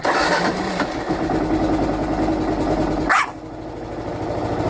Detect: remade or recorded recorded